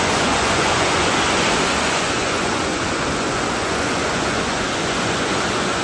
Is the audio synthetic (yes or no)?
yes